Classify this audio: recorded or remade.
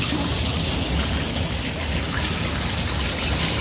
recorded